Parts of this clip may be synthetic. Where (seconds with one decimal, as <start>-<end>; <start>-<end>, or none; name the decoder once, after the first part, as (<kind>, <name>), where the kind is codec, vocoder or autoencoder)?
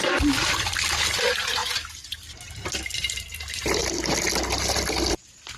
1.1-3.8 (vocoder, BigVGAN v2); 5.1-5.6